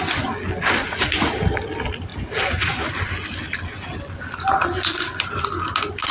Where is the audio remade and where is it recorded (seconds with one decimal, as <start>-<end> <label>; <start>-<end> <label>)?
0.0-0.8 recorded; 0.8-1.4 remade; 1.4-2.1 recorded; 2.1-2.9 remade; 2.9-6.1 recorded